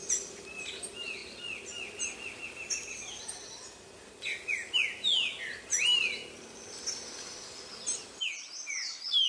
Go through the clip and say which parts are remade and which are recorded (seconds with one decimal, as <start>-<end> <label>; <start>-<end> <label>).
0.0-9.3 recorded